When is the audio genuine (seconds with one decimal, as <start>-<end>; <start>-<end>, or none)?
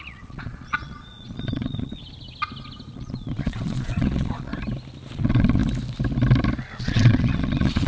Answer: 2.0-2.9; 4.5-5.1; 5.6-6.8